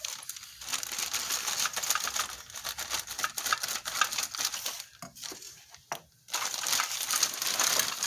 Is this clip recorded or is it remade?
recorded